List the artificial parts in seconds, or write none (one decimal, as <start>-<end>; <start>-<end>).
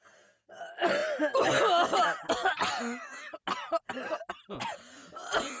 none